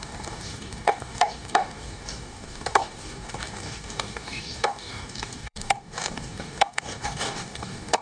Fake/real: fake